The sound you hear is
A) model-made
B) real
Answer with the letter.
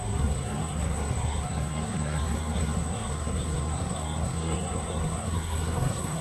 A